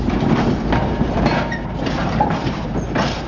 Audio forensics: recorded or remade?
remade